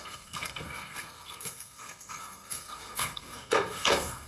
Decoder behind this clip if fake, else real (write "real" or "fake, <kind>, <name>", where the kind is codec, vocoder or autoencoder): fake, codec, SNAC